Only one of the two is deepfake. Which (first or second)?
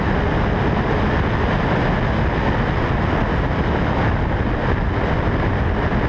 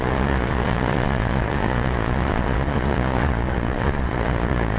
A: second